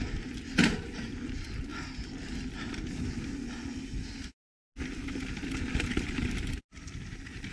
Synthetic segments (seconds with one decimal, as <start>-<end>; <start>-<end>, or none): none